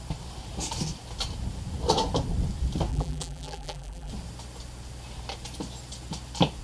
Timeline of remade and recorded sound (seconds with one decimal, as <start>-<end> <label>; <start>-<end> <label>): 0.0-2.9 recorded; 2.9-4.1 remade; 4.1-6.6 recorded